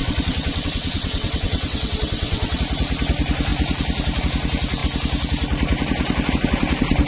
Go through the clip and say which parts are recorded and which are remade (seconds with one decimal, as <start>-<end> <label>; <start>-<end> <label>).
0.0-2.6 remade; 2.6-7.1 recorded